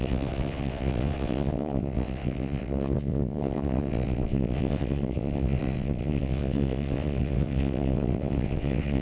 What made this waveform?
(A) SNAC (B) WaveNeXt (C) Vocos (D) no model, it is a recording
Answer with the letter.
B